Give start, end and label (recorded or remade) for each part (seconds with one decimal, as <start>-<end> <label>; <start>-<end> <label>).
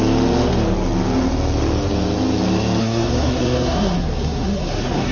0.0-2.8 recorded; 2.8-5.1 remade